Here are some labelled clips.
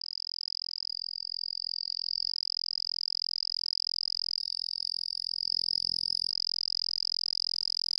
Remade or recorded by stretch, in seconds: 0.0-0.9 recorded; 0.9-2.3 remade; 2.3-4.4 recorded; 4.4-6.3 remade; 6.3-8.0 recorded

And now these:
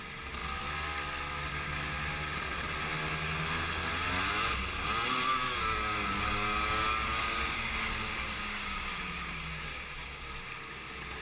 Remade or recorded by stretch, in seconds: 0.0-5.3 recorded; 5.3-10.2 remade; 10.2-11.2 recorded

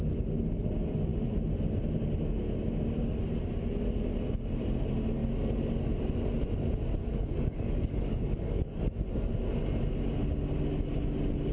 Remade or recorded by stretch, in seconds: 0.0-7.0 recorded; 7.0-8.8 remade; 8.8-11.5 recorded